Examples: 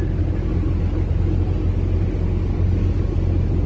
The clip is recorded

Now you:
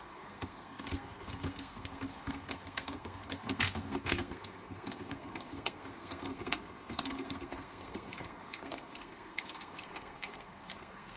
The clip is remade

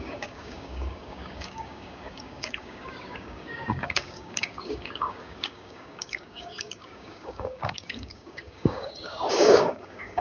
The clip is remade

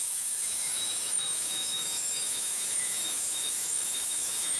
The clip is remade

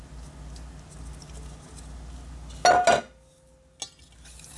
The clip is recorded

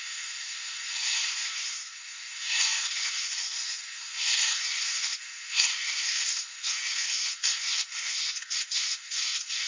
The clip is remade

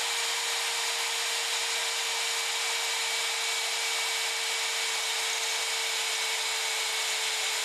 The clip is recorded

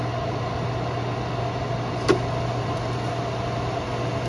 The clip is recorded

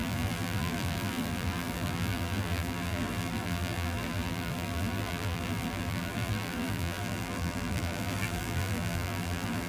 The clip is remade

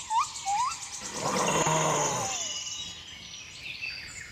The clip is recorded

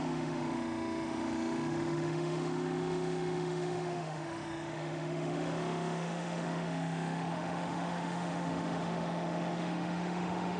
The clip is remade